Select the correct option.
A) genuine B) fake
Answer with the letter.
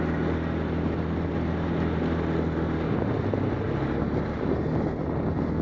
A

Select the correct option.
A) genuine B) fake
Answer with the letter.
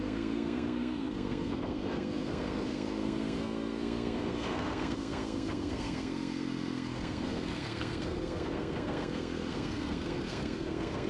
B